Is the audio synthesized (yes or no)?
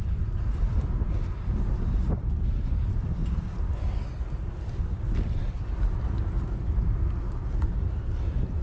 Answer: no